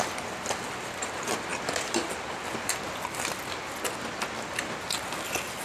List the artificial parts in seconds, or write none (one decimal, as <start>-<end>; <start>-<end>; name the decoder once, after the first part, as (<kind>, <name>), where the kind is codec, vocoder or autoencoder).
none